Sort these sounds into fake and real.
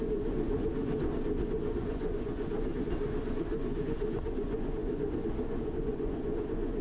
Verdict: fake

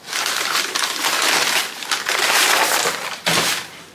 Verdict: real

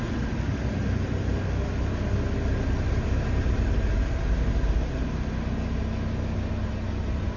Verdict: real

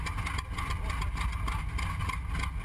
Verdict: real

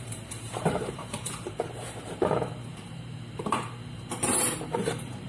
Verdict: fake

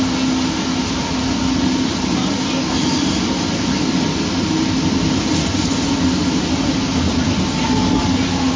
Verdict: real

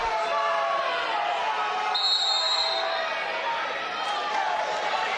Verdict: real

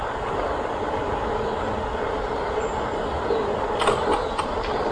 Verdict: real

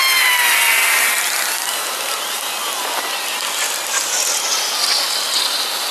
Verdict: real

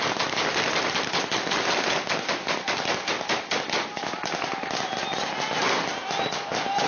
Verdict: real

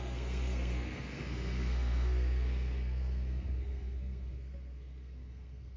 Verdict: fake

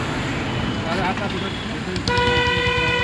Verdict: real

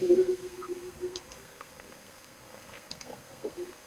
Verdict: fake